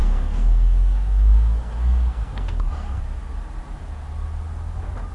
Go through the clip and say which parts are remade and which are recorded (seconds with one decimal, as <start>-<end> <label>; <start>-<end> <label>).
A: 0.0-3.0 remade; 3.0-5.1 recorded

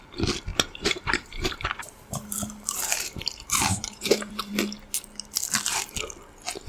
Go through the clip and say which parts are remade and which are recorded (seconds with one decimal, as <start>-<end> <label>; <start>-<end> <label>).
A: 0.0-0.5 recorded; 0.5-4.5 remade; 4.5-6.7 recorded

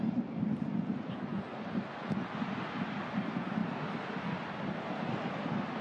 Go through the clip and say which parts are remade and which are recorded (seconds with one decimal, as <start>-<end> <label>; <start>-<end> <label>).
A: 0.0-1.3 remade; 1.3-2.8 recorded; 2.8-5.8 remade

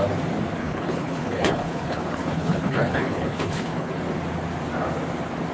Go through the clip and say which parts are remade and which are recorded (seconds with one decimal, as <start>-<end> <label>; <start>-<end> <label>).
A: 0.0-0.6 recorded; 0.6-3.9 remade; 3.9-5.5 recorded

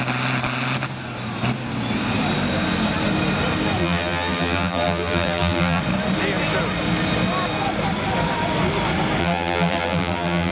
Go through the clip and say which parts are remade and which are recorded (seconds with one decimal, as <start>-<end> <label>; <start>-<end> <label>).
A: 0.0-3.8 recorded; 3.8-5.8 remade; 5.8-9.2 recorded; 9.2-10.5 remade